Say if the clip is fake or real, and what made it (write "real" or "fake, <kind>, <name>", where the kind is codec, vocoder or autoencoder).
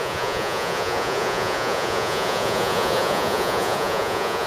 fake, vocoder, Vocos